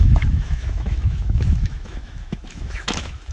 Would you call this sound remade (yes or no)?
yes